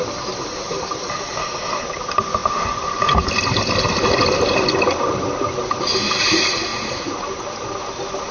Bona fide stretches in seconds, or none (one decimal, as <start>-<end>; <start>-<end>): 0.0-8.3

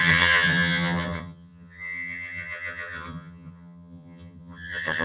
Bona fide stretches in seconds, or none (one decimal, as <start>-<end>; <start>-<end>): none

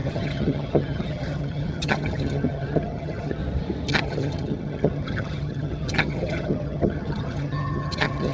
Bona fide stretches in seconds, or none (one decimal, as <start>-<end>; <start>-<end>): 3.4-3.9

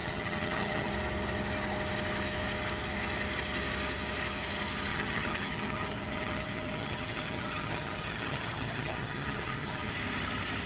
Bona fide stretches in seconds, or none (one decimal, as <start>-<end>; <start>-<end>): 0.9-4.9; 9.9-10.7

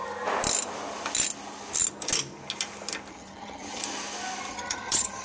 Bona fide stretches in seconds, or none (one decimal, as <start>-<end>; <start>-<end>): 0.0-3.1; 3.8-4.5

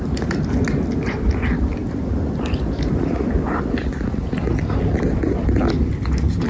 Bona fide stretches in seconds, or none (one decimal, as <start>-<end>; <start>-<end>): 0.0-6.5